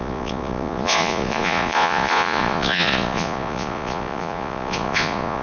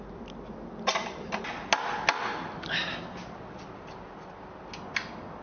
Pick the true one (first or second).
second